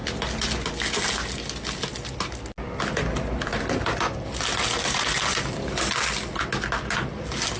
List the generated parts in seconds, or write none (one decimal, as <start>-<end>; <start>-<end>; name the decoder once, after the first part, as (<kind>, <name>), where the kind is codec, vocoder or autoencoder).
none